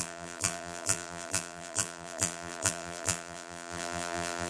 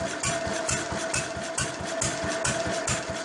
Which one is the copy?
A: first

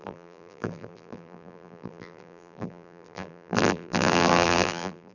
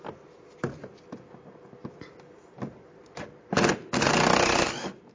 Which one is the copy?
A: first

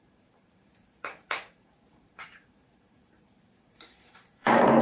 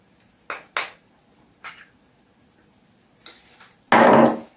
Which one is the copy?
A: first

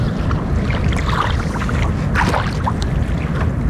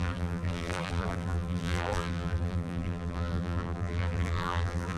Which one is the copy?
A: second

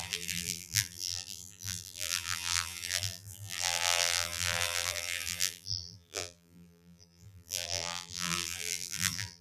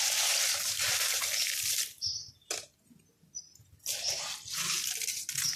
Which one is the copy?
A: first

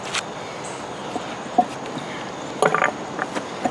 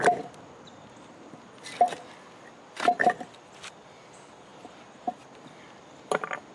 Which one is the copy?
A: second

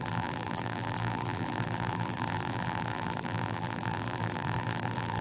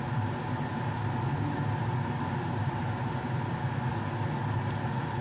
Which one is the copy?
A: first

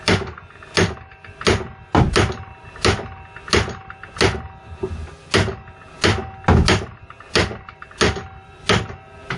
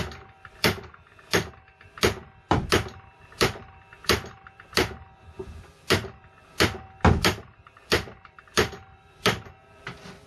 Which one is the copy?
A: second